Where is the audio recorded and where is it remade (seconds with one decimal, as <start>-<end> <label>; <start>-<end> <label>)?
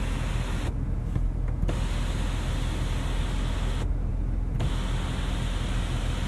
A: 0.0-6.3 recorded